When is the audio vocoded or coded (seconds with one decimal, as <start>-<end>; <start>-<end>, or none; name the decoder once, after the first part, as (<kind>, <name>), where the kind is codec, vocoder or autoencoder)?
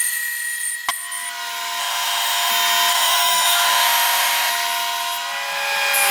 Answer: 1.8-2.5 (autoencoder, DAC-VAE); 2.9-4.5